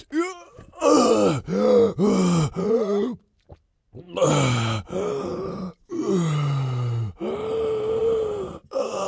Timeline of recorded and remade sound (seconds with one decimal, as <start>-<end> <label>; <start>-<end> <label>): 0.0-5.3 recorded; 5.3-6.0 remade; 6.0-8.0 recorded; 8.0-9.1 remade